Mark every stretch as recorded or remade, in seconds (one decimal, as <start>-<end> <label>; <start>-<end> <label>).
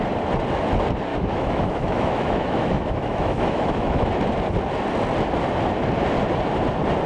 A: 0.0-1.1 recorded; 1.1-4.1 remade; 4.1-7.1 recorded